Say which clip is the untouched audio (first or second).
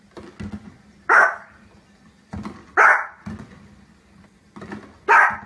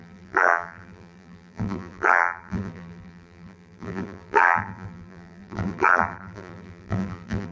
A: first